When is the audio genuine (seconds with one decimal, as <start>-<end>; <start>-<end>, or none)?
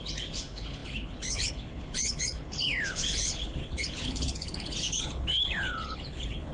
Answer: none